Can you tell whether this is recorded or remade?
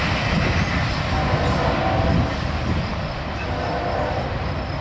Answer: recorded